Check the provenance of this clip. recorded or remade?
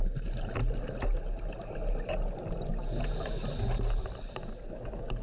recorded